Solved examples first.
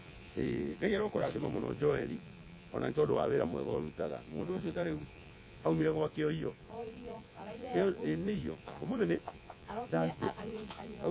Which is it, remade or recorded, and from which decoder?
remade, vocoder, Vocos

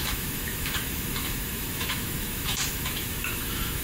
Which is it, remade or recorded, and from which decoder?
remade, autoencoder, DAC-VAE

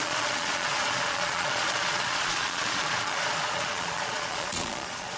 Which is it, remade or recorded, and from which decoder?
remade, vocoder, Vocos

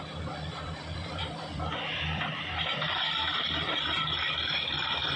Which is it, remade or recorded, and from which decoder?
remade, vocoder, BigVGAN v2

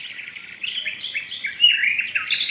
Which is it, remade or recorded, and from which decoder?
recorded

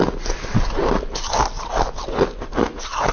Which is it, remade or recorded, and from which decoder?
recorded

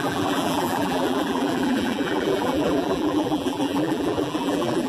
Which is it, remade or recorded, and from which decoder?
remade, vocoder, BigVGAN v2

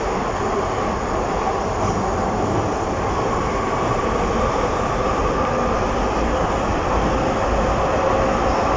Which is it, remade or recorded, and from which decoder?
recorded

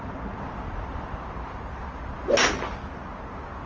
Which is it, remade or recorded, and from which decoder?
recorded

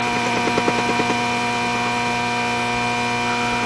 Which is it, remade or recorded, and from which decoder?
recorded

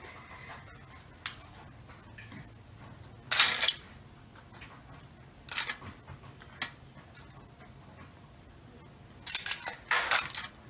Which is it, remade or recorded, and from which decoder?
recorded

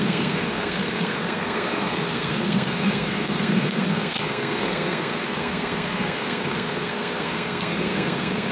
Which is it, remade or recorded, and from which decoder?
remade, codec, SNAC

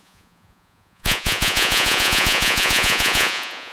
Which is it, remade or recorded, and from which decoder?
remade, vocoder, Vocos